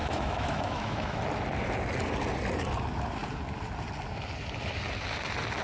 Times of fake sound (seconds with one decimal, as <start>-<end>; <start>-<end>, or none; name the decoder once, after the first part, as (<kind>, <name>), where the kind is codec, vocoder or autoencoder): 0.0-1.2 (autoencoder, DAC-VAE)